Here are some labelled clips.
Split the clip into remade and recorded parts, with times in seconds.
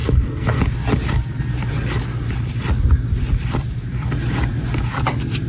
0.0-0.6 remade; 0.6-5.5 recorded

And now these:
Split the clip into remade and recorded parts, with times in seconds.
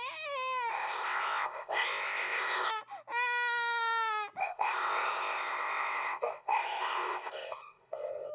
0.0-0.7 recorded; 0.7-2.7 remade; 2.7-4.4 recorded; 4.4-8.3 remade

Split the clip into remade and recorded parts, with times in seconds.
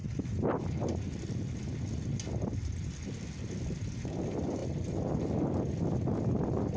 0.0-6.8 recorded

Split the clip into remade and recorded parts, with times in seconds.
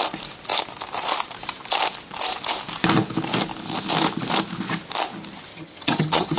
0.0-5.5 recorded; 5.5-6.4 remade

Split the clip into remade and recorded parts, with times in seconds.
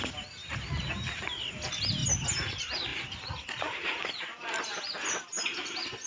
0.0-6.1 recorded